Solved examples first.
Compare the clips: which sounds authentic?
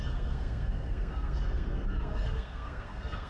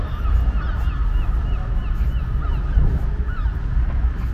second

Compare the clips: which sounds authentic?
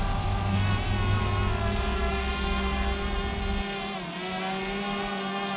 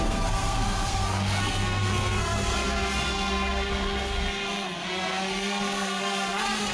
first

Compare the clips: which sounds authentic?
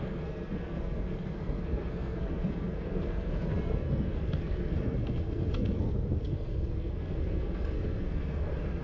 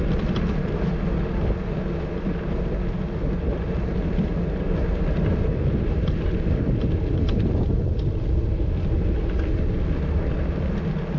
second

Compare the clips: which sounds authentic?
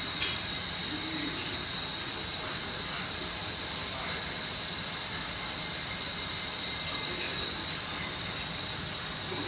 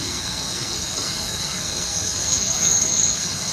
first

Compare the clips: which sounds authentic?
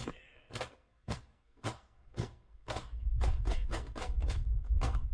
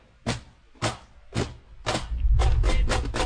second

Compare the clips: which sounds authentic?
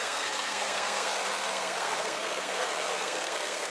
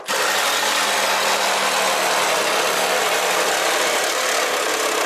second